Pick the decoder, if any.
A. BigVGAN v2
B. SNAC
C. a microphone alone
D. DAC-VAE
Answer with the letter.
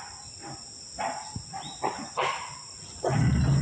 C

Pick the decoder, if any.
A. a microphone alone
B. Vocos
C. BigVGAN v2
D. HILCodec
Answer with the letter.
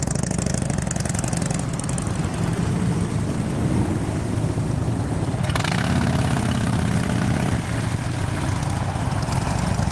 A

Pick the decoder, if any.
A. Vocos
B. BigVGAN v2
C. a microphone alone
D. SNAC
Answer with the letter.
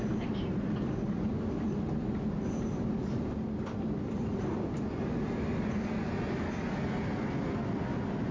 C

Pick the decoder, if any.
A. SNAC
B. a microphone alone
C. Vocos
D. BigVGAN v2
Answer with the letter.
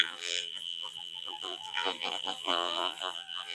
D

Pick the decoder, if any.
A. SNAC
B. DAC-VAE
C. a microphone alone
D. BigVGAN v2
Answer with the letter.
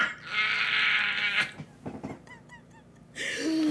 C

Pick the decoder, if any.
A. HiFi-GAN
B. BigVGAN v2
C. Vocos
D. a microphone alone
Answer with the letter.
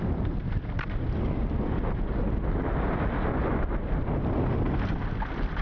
D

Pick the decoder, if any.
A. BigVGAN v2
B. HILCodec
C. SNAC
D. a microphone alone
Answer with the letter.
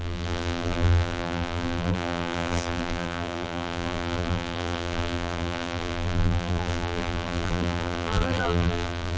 A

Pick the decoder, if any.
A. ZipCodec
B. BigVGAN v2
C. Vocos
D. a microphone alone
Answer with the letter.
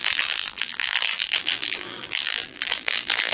B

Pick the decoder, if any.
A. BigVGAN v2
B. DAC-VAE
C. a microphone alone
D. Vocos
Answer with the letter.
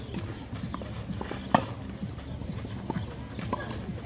C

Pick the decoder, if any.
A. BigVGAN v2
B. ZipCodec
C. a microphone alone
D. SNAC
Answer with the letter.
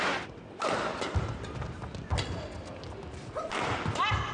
C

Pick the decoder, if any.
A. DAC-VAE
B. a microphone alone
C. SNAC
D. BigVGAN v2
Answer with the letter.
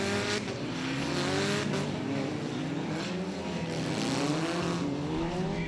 B